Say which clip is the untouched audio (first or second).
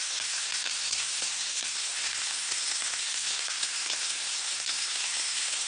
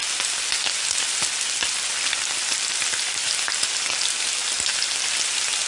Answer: second